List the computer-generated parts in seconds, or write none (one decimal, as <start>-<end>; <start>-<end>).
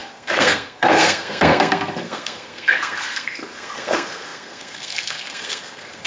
0.0-6.1